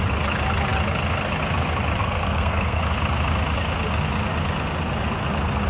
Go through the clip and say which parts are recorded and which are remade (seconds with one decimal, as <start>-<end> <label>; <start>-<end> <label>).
0.0-2.0 recorded; 2.0-2.8 remade; 2.8-5.7 recorded